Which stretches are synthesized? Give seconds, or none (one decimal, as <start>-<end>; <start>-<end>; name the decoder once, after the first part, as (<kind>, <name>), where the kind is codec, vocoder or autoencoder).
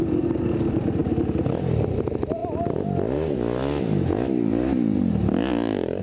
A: none